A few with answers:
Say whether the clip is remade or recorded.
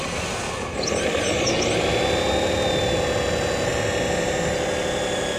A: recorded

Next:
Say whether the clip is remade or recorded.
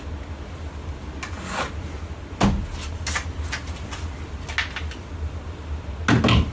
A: recorded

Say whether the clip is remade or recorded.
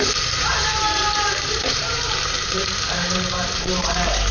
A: remade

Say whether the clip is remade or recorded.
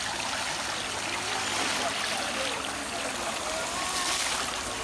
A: recorded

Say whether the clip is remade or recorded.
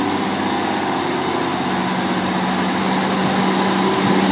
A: recorded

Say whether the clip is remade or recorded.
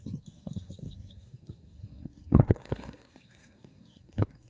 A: remade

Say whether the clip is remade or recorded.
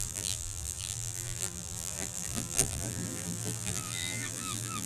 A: remade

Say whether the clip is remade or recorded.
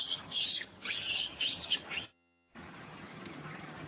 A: remade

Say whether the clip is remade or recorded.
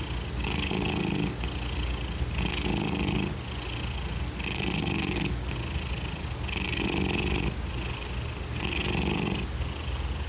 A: recorded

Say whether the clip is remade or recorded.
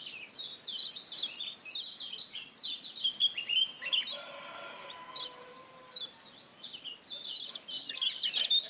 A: recorded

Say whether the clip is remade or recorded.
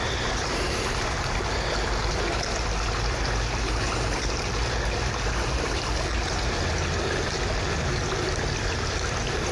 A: recorded